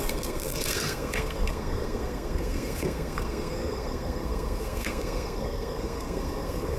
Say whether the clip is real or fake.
fake